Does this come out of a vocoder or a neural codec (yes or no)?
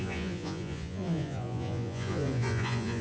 yes